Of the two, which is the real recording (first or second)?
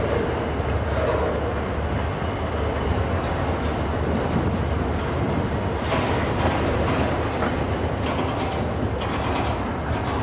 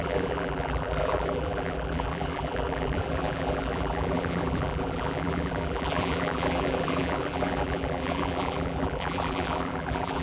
first